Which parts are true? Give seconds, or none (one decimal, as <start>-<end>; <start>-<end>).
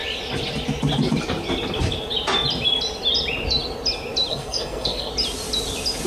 0.0-4.3; 5.1-6.1